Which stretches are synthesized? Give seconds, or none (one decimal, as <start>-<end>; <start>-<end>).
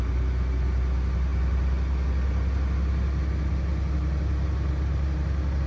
none